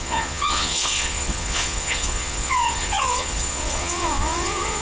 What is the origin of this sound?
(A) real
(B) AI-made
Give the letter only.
B